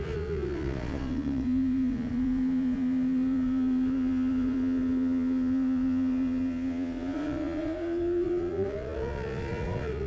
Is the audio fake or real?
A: fake